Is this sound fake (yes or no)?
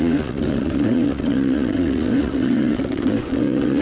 yes